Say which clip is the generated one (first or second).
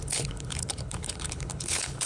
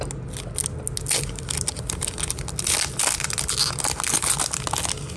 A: first